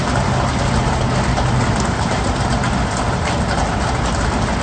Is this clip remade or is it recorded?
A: recorded